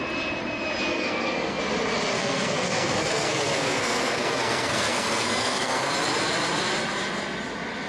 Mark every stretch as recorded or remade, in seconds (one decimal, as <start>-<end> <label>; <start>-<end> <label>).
0.0-0.9 recorded; 0.9-1.6 remade; 1.6-2.2 recorded; 2.2-5.9 remade; 5.9-7.9 recorded